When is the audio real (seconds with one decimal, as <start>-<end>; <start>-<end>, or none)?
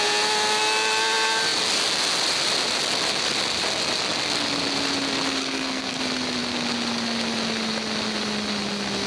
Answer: 0.0-5.4; 6.0-9.1